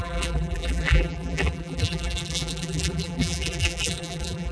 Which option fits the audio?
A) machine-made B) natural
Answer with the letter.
A